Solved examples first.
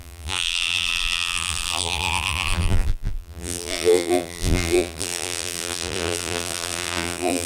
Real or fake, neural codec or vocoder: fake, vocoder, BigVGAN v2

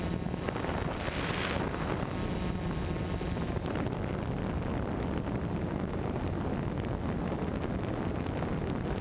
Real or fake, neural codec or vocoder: real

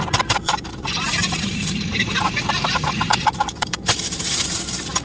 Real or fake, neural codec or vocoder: fake, vocoder, BigVGAN v2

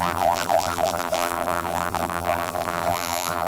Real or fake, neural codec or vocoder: fake, vocoder, BigVGAN v2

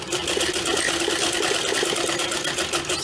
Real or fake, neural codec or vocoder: real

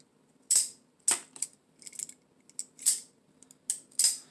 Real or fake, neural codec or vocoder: real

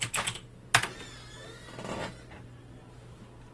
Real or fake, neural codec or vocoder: real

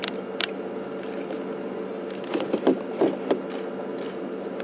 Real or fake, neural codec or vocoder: real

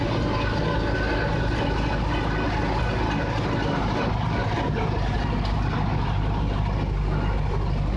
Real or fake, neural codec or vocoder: real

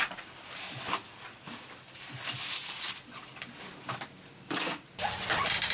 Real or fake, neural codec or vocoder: fake, vocoder, BigVGAN v2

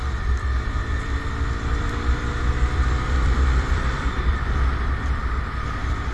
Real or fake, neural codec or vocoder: fake, vocoder, BigVGAN v2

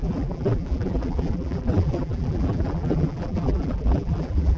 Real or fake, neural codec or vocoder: fake, vocoder, BigVGAN v2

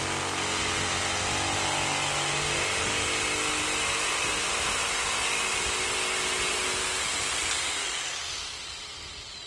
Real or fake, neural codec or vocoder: real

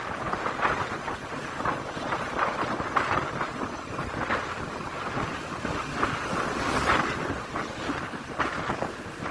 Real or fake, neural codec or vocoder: fake, vocoder, BigVGAN v2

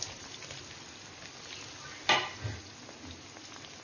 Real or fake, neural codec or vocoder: real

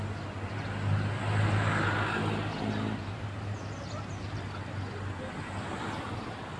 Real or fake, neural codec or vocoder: real